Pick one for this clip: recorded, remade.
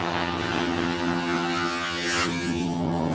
remade